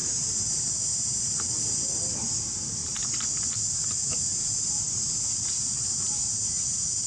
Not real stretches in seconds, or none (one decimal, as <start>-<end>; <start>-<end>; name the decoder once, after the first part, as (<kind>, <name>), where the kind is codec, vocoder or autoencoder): 0.5-7.1 (vocoder, BigVGAN v2)